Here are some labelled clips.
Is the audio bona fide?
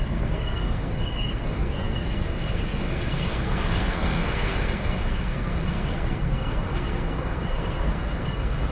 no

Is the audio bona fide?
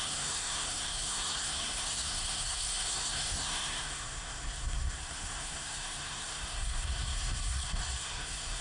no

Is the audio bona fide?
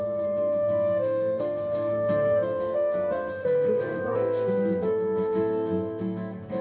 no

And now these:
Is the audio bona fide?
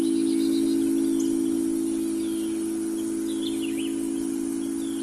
yes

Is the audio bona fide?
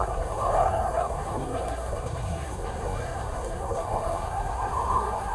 no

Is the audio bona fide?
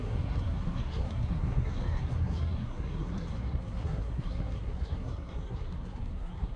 no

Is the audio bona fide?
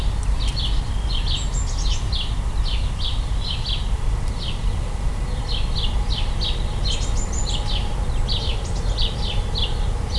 yes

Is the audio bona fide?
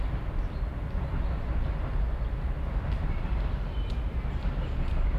yes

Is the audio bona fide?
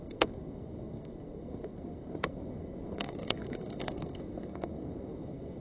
no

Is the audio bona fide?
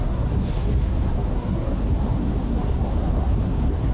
no